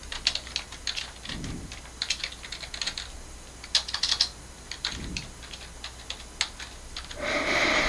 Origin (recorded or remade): recorded